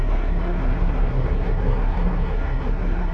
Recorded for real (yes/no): no